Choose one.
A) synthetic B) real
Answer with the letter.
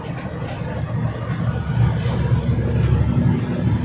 B